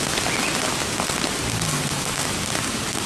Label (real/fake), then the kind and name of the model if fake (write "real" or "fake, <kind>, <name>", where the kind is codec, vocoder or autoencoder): real